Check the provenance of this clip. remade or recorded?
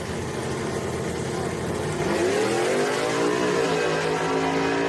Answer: recorded